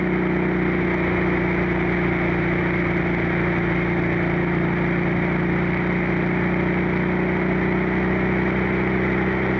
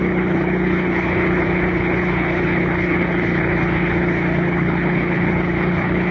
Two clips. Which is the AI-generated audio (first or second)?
second